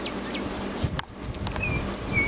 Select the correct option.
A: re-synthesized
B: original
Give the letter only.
B